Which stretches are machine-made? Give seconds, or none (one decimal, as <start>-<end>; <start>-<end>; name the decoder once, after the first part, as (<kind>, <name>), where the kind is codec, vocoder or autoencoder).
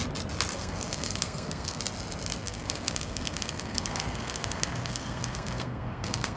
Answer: 0.5-1.8 (codec, SNAC); 2.4-6.4